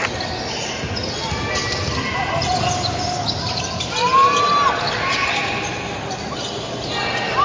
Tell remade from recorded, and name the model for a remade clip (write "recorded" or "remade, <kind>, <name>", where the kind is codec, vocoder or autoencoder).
recorded